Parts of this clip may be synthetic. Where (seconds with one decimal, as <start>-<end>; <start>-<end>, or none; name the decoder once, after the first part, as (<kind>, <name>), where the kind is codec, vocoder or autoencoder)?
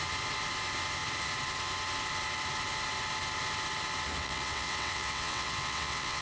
4.2-6.2 (vocoder, WaveNeXt)